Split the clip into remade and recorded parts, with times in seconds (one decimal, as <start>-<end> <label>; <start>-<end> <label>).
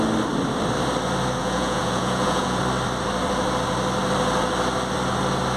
0.0-1.4 recorded; 1.4-2.6 remade; 2.6-5.6 recorded